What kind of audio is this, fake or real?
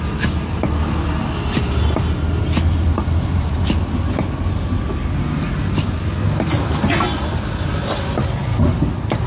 real